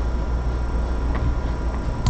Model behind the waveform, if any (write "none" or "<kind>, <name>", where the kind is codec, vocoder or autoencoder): none